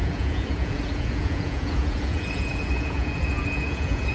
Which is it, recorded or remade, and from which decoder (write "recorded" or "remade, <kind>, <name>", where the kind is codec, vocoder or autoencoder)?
remade, vocoder, Vocos